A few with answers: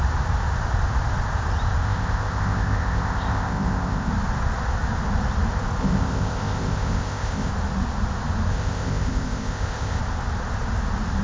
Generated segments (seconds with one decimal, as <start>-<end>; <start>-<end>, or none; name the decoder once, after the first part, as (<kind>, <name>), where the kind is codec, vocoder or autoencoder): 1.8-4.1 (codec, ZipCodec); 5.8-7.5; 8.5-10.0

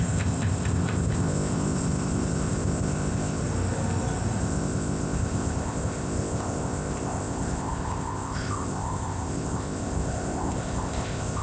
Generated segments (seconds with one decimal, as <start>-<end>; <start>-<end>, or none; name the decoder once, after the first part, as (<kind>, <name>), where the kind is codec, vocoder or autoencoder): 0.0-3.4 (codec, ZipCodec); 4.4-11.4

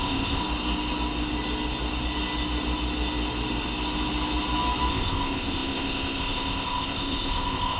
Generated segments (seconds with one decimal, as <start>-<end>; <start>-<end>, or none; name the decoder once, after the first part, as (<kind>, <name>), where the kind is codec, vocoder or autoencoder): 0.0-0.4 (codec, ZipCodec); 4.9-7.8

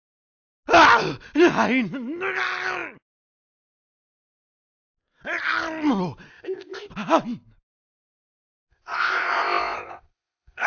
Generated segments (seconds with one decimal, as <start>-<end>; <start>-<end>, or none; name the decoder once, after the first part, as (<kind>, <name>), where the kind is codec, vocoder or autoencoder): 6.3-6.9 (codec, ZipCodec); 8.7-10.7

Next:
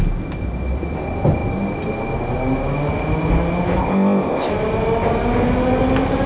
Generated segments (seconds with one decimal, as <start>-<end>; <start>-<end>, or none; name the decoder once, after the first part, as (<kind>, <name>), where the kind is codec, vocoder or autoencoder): 3.8-4.5 (codec, ZipCodec)